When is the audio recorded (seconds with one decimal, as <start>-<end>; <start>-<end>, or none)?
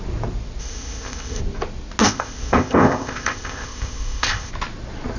0.0-0.6; 1.4-2.0; 4.5-5.2